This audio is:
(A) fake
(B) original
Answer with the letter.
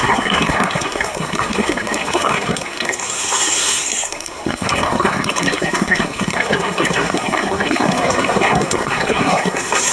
A